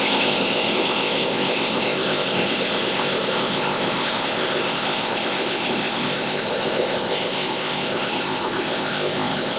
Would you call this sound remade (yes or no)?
yes